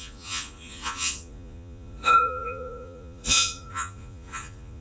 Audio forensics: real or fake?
fake